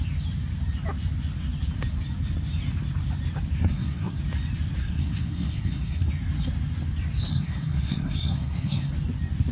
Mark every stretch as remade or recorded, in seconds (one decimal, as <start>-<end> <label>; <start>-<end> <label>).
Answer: 0.0-3.6 recorded; 3.6-4.2 remade; 4.2-4.8 recorded; 4.8-6.1 remade; 6.1-7.3 recorded; 7.3-8.9 remade; 8.9-9.5 recorded